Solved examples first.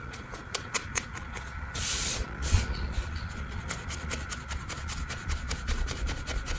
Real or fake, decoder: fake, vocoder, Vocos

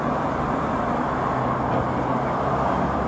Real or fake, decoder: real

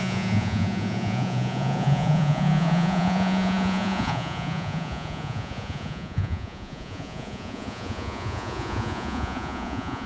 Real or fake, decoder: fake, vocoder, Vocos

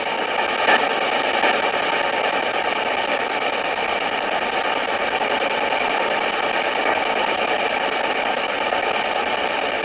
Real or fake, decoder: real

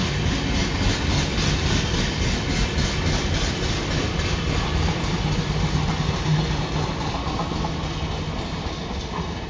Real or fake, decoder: real